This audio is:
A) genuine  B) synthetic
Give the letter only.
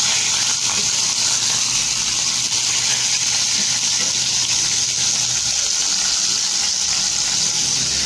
A